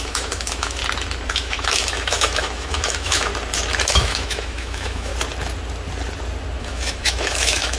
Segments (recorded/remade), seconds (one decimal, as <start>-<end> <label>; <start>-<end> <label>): 0.0-0.8 remade; 0.8-1.3 recorded; 1.3-3.3 remade; 3.3-3.8 recorded; 3.8-5.1 remade; 5.1-6.6 recorded; 6.6-7.8 remade

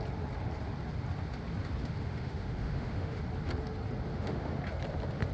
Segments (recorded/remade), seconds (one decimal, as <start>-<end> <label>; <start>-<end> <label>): 0.0-1.8 recorded; 1.8-3.2 remade; 3.2-4.1 recorded; 4.1-4.6 remade; 4.6-5.3 recorded

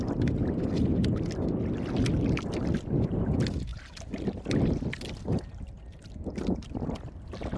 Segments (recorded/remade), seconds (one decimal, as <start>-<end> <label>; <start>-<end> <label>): 0.0-7.6 recorded

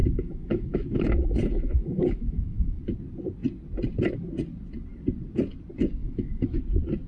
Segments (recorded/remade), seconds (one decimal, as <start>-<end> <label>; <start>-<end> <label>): 0.0-2.8 remade; 2.8-6.0 recorded; 6.0-6.6 remade; 6.6-7.1 recorded

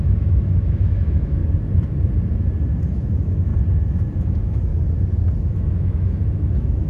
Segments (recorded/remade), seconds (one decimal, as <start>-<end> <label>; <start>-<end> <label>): 0.0-1.4 remade; 1.4-2.8 recorded; 2.8-3.5 remade; 3.5-4.2 recorded; 4.2-4.7 remade; 4.7-5.4 recorded; 5.4-6.9 remade

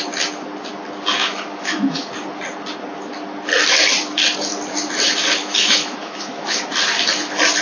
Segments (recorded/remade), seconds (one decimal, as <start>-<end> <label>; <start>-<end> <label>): 0.0-1.2 recorded; 1.2-2.1 remade; 2.1-5.4 recorded; 5.4-6.7 remade; 6.7-7.6 recorded

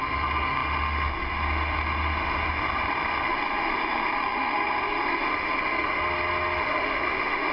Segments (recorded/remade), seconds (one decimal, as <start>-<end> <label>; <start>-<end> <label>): 0.0-6.0 remade; 6.0-6.6 recorded; 6.6-7.5 remade

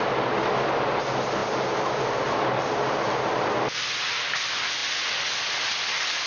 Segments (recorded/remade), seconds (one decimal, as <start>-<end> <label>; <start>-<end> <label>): 0.0-6.3 recorded